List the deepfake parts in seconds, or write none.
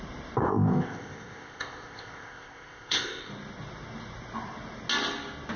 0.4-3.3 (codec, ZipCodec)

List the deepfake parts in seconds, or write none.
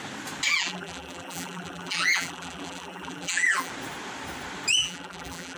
0.5-3.7 (vocoder, BigVGAN v2); 4.8-5.6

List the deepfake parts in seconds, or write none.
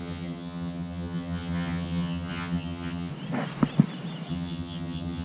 0.0-3.1 (vocoder, HiFi-GAN); 4.3-5.2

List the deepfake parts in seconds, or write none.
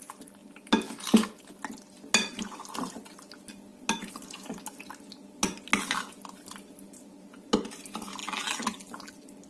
8.2-9.1 (vocoder, BigVGAN v2)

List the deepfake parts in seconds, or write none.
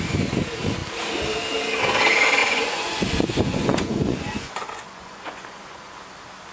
2.4-5.9 (vocoder, Vocos)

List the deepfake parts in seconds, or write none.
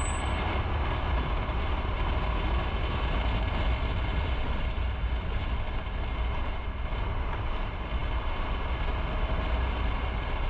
none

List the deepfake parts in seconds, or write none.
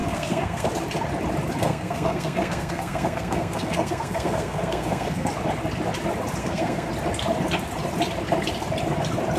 0.0-0.7 (codec, SNAC); 1.6-5.3; 6.4-6.9